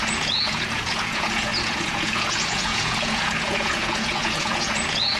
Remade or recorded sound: remade